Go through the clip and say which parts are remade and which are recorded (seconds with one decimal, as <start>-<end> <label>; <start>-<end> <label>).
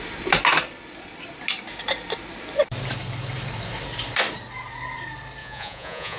0.0-5.4 recorded; 5.4-6.2 remade